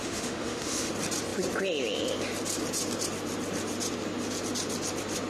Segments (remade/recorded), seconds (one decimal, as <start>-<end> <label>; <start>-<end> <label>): 0.0-0.9 remade; 0.9-5.3 recorded

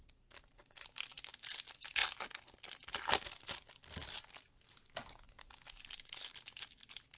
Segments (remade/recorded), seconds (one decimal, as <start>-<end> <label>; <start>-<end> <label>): 0.0-7.2 recorded